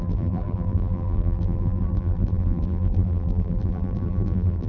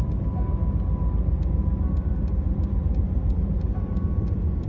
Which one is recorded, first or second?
second